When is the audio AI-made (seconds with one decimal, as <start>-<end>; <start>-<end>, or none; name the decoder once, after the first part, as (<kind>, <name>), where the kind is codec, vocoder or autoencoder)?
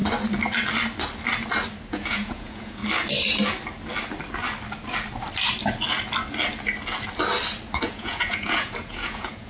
1.9-2.8 (vocoder, Vocos); 7.8-9.5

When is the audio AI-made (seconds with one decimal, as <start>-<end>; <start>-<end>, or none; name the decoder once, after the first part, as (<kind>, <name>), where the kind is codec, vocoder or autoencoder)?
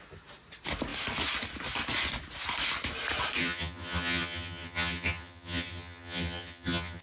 3.4-7.0 (vocoder, HiFi-GAN)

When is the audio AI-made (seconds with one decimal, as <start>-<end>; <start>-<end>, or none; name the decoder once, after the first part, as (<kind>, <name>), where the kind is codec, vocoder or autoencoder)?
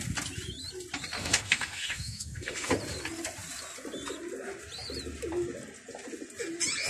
1.2-2.7 (autoencoder, DAC-VAE)